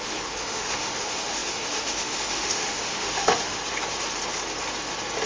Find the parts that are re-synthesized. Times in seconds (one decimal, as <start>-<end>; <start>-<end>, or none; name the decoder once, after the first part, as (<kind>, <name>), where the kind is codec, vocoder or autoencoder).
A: 0.0-3.6 (autoencoder, DAC-VAE)